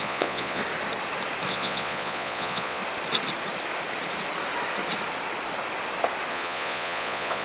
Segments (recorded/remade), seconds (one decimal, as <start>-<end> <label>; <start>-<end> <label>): 0.0-0.6 remade; 0.6-1.5 recorded; 1.5-2.8 remade; 2.8-6.3 recorded; 6.3-7.4 remade